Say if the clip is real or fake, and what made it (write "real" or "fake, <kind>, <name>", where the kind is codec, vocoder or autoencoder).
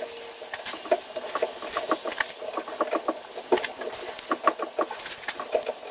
real